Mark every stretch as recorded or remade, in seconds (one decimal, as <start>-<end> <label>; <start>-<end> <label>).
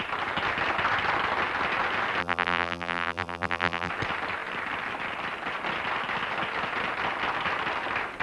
0.0-2.2 recorded; 2.2-3.9 remade; 3.9-8.2 recorded